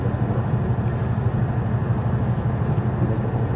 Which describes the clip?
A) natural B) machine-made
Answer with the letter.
A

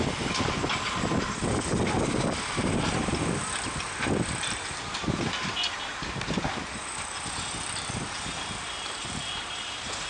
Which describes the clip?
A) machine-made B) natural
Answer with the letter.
B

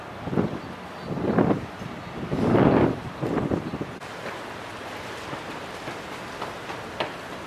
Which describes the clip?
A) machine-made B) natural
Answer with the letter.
B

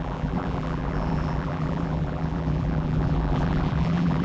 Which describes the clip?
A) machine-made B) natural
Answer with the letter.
A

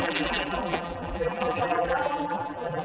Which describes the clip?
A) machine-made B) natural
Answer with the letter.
A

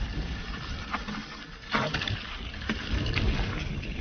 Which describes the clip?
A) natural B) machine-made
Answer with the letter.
A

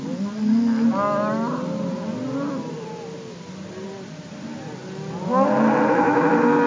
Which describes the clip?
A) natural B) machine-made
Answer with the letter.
A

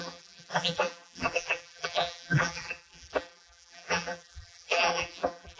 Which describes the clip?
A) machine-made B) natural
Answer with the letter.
A